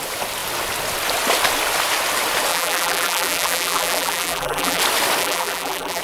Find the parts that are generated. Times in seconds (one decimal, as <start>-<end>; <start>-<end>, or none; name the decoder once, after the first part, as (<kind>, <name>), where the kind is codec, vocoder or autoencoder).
2.5-4.8 (vocoder, BigVGAN v2); 5.2-6.0